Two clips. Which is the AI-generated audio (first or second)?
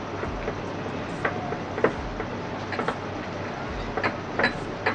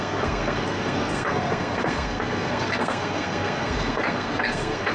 second